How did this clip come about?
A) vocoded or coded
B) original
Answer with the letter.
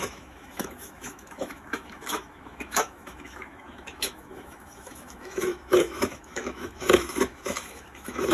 A